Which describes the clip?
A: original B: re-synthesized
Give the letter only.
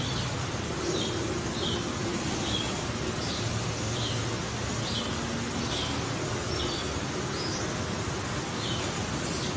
A